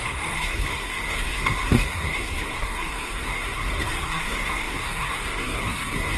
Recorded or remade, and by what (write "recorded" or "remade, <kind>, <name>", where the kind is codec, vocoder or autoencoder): remade, codec, SNAC